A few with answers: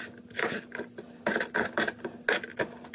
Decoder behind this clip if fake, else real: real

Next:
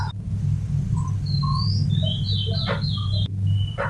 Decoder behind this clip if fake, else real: real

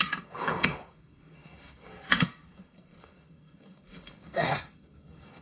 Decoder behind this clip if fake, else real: fake, codec, SNAC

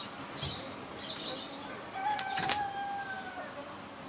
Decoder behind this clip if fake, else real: real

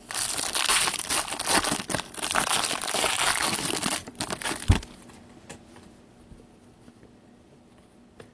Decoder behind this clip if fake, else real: real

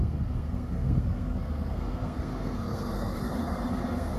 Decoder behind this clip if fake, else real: fake, codec, SNAC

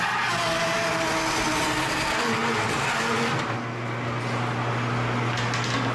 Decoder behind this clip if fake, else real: real